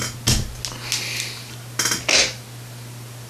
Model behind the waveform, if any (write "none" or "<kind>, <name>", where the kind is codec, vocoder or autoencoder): none